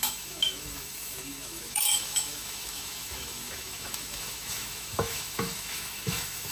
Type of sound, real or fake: fake